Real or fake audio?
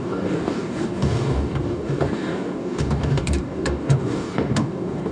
fake